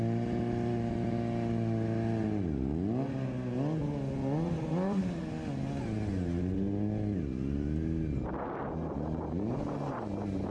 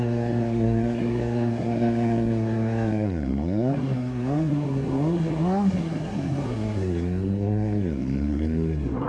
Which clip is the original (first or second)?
first